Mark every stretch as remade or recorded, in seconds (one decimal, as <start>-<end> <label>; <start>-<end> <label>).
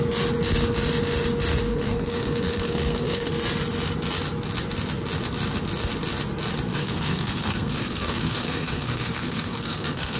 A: 0.0-1.7 recorded; 1.7-3.3 remade; 3.3-6.7 recorded; 6.7-10.2 remade